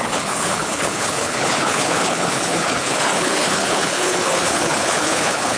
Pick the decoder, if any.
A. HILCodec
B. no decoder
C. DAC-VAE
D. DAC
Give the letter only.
A